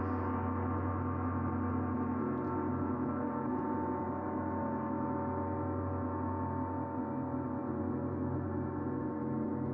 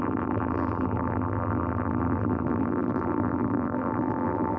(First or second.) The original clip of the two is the first